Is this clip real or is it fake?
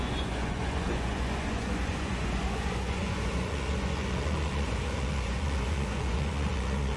fake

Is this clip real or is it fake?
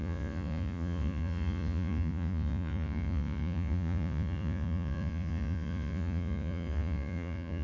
fake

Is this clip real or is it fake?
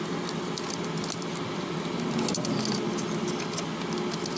real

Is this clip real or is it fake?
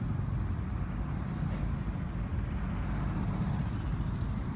real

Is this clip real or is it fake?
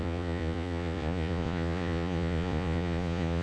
fake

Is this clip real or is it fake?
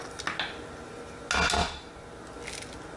real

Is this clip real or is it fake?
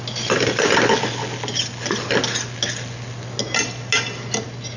real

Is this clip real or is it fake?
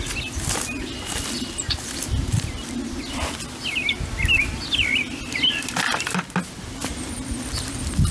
real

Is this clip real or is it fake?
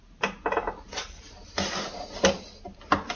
real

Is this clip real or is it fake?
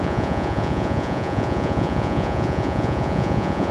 fake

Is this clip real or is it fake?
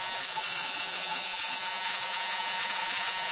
fake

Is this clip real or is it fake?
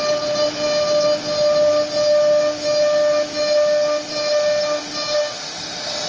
real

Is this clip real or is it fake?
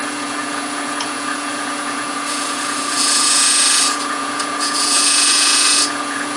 fake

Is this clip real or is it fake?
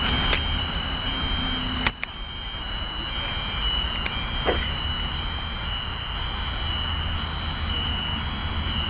real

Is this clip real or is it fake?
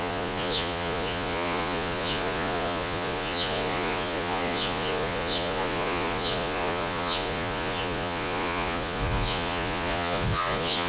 fake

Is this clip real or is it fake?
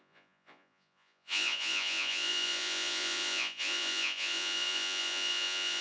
fake